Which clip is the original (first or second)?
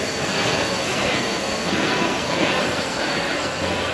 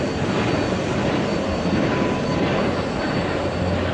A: second